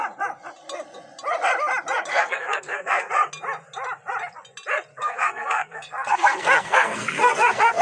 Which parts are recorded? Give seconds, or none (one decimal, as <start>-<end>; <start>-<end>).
0.0-2.1; 3.1-4.9

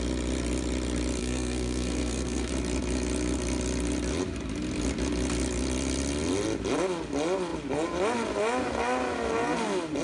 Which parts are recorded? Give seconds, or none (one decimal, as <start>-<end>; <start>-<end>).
0.0-1.2; 2.5-10.0

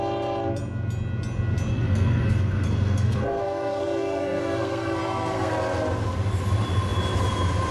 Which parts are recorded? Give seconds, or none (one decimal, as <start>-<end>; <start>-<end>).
0.0-1.7; 5.5-7.7